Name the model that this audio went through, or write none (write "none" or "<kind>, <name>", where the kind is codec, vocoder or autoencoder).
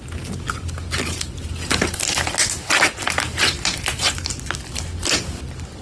none